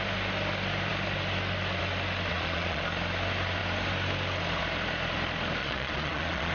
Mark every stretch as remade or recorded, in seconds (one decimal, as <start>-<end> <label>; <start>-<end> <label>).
0.0-2.3 recorded; 2.3-2.8 remade; 2.8-5.6 recorded; 5.6-6.5 remade